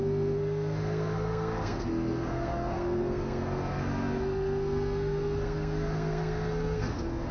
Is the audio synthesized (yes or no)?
yes